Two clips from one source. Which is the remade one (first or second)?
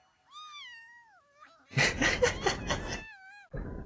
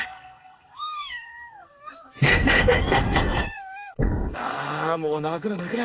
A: second